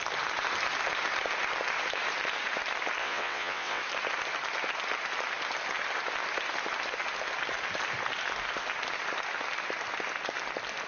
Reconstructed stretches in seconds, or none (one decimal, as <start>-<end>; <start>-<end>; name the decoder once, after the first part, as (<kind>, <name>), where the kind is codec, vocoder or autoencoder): 3.0-3.8 (vocoder, WaveNeXt)